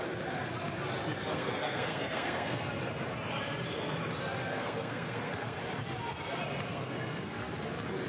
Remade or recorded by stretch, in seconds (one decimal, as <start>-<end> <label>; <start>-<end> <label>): 0.0-1.3 recorded; 1.3-2.7 remade; 2.7-4.4 recorded; 4.4-5.6 remade; 5.6-6.7 recorded; 6.7-7.4 remade; 7.4-8.1 recorded